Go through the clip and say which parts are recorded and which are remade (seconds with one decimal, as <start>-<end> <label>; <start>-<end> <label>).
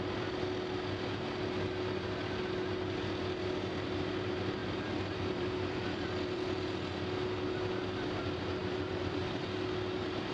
0.0-4.6 recorded; 4.6-6.6 remade; 6.6-8.6 recorded; 8.6-9.2 remade; 9.2-10.3 recorded